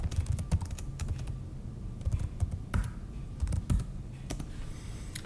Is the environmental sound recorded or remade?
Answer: recorded